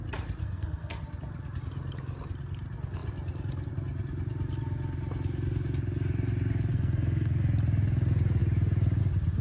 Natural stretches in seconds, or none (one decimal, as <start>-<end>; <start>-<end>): 0.0-0.4; 1.0-6.7; 7.4-9.4

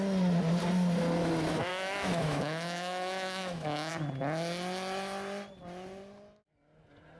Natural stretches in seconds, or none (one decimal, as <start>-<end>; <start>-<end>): 0.0-1.7; 3.9-7.2

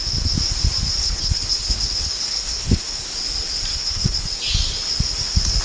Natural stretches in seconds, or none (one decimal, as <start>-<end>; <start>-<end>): 0.0-1.0; 3.0-3.7; 4.2-5.6

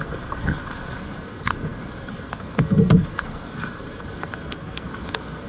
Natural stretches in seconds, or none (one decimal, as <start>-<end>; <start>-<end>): none

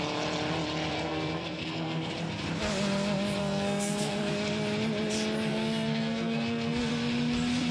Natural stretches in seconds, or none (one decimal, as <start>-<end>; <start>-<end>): 0.0-0.9; 2.1-3.4; 4.3-5.5; 6.9-7.7

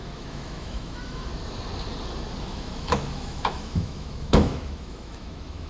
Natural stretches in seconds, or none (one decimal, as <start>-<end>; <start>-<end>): 1.3-2.4

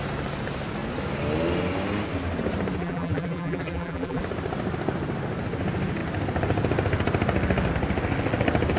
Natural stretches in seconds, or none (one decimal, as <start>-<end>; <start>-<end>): 0.0-2.8; 4.2-8.8

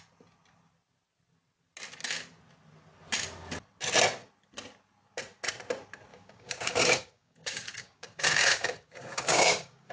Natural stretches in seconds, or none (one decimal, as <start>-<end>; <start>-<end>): 0.0-6.1